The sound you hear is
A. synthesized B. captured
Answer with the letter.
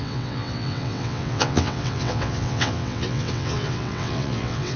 A